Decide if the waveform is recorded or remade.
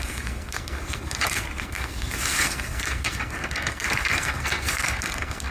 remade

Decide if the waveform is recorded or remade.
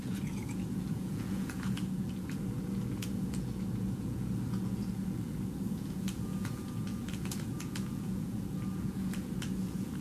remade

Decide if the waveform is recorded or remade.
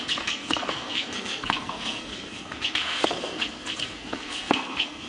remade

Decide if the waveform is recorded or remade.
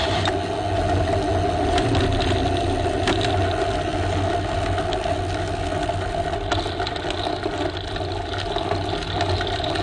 recorded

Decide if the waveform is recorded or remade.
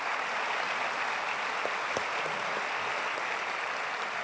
recorded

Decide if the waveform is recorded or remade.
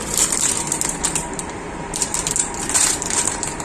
remade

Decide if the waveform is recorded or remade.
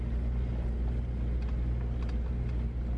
recorded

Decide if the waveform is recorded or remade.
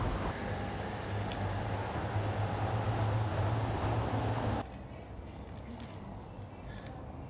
recorded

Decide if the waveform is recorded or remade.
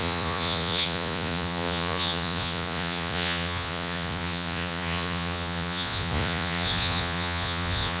remade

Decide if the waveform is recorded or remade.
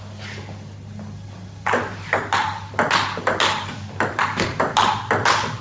recorded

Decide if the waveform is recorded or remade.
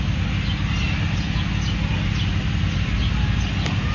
recorded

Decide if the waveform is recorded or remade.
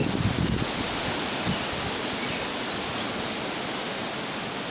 recorded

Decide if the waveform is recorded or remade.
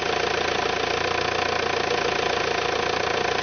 recorded